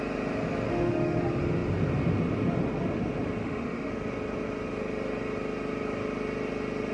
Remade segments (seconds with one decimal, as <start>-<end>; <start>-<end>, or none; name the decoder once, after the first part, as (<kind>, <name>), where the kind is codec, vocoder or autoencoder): 0.7-1.2 (autoencoder, DAC-VAE); 3.4-3.9